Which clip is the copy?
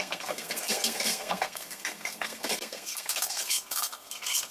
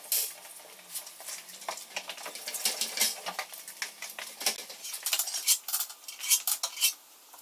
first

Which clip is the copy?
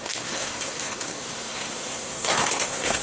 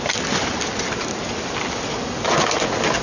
first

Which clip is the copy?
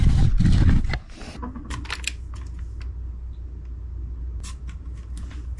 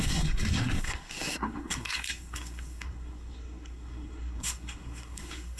second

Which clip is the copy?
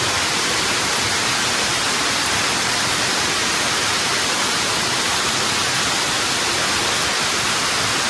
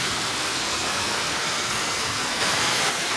second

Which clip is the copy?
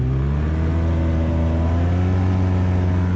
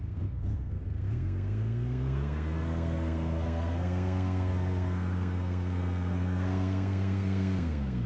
second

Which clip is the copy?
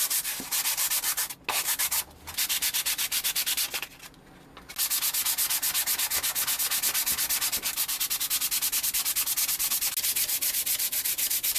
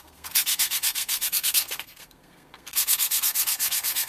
second